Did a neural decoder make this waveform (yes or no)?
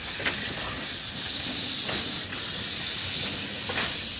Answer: no